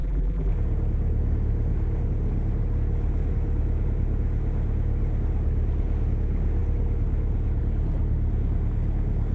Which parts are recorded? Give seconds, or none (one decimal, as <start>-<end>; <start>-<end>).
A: 0.5-9.3